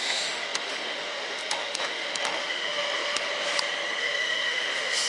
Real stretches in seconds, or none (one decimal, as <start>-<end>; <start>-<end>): 3.3-4.0